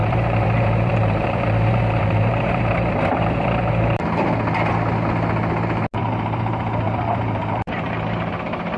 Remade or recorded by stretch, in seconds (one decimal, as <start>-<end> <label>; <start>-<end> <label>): 0.0-3.8 remade; 3.8-6.0 recorded; 6.0-8.3 remade; 8.3-8.8 recorded

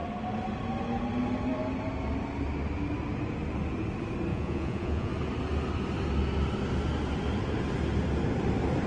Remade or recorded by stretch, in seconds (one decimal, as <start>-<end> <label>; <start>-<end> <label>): 0.0-4.3 recorded; 4.3-5.1 remade; 5.1-8.9 recorded

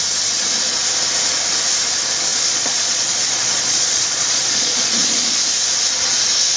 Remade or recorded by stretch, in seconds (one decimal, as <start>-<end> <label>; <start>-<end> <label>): 0.0-2.3 recorded; 2.3-5.4 remade; 5.4-6.6 recorded

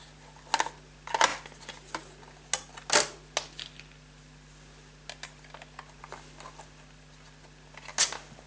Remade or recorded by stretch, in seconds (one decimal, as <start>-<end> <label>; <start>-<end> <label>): 0.0-8.5 recorded

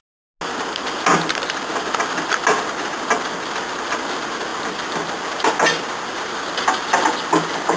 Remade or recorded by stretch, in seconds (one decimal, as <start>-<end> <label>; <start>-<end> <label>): 0.0-7.8 recorded

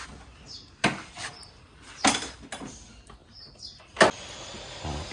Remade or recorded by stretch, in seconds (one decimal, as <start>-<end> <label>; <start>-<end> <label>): 0.0-3.2 recorded; 3.2-3.8 remade; 3.8-5.1 recorded